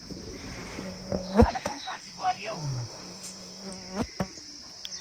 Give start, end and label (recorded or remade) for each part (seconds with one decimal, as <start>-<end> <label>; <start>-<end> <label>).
0.0-0.7 recorded; 0.7-3.7 remade; 3.7-5.0 recorded